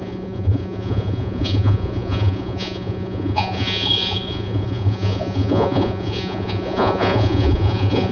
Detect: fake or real fake